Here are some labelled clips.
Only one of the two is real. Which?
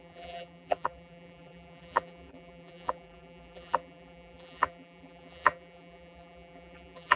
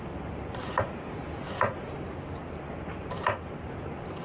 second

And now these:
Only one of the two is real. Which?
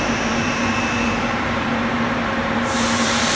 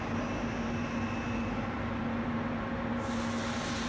second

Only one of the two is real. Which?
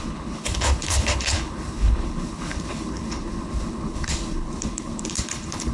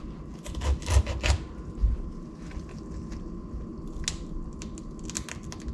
second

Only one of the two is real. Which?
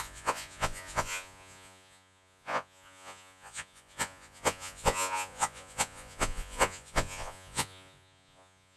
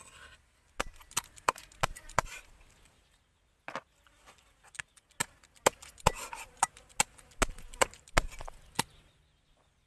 second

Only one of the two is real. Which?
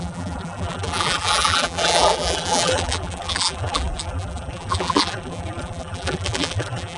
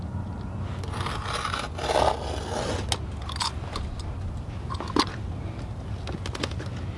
second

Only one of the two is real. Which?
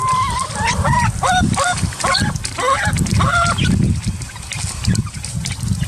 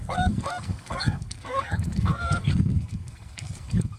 first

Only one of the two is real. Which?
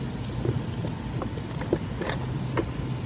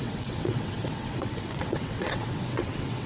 first